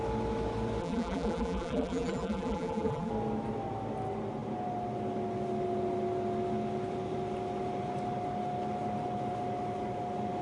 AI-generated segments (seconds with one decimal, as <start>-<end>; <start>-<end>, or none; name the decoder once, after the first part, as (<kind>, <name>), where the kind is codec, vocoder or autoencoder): 0.8-3.1 (vocoder, BigVGAN v2)